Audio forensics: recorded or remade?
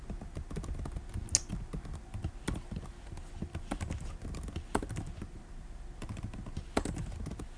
recorded